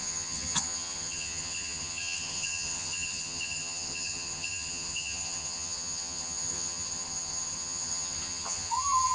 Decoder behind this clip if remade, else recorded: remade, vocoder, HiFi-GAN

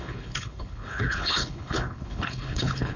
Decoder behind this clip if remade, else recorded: remade, codec, HILCodec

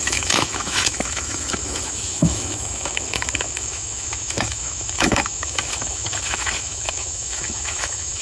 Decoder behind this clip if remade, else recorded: remade, autoencoder, DAC-VAE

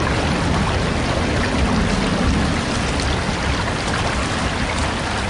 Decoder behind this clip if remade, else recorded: recorded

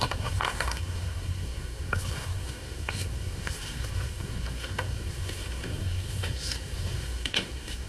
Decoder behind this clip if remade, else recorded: remade, codec, SNAC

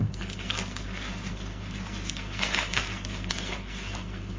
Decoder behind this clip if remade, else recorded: remade, codec, SNAC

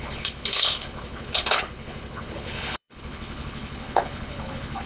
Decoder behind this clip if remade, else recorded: remade, codec, HILCodec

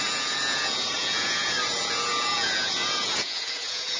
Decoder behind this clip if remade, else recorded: remade, vocoder, Vocos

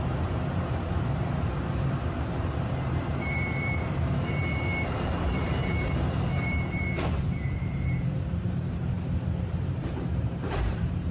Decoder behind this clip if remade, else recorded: remade, vocoder, BigVGAN v2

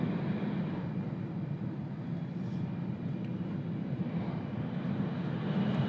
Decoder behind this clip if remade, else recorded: recorded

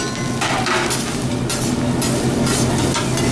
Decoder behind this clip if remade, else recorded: recorded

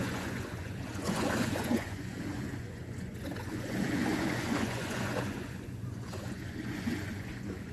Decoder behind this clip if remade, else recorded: remade, vocoder, Vocos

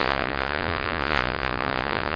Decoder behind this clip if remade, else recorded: remade, vocoder, Vocos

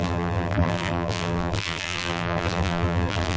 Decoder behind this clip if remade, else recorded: remade, vocoder, BigVGAN v2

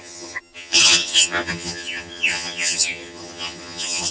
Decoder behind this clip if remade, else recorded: remade, vocoder, HiFi-GAN